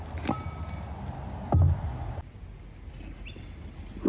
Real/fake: real